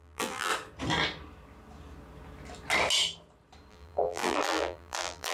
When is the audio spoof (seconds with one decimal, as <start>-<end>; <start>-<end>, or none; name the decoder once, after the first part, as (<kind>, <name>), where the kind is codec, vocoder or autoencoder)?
0.0-0.5 (vocoder, BigVGAN v2); 3.7-5.3